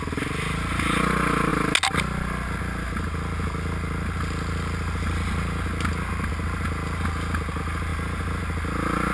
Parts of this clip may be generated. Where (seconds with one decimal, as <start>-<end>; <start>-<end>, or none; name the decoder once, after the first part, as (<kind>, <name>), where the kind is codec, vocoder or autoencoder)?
7.9-8.4 (vocoder, BigVGAN v2)